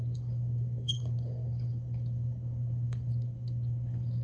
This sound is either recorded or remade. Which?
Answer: remade